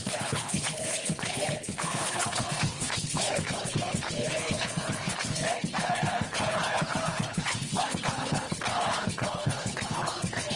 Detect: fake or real fake